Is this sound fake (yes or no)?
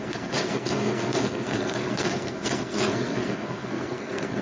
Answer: yes